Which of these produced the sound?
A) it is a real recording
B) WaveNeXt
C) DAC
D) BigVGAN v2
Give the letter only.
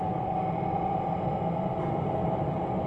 A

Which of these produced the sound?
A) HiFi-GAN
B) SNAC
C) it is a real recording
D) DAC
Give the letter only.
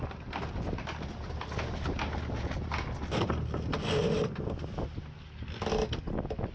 C